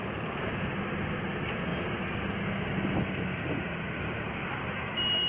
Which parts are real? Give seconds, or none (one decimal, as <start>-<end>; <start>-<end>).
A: 0.0-5.3